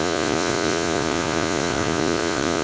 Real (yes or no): no